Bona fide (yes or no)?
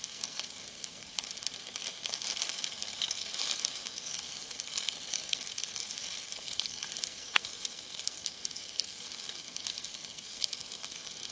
no